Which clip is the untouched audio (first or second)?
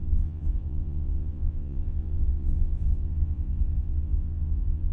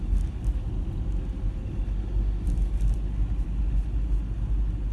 second